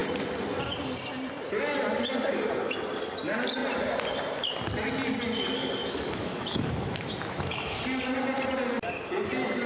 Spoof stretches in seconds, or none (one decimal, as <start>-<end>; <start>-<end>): 5.8-7.8